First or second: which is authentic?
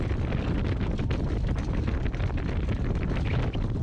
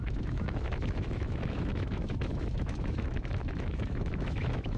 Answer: first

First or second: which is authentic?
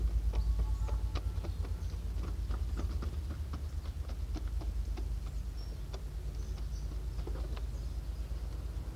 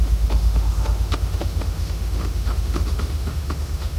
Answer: first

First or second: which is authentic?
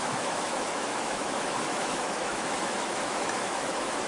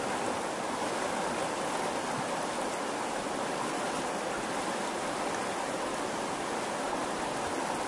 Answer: second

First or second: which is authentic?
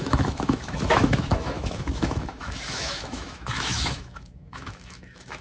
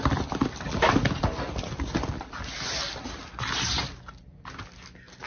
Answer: second